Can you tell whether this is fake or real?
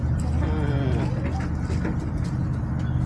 real